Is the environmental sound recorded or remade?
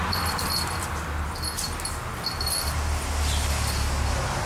recorded